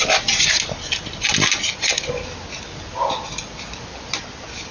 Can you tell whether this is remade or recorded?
recorded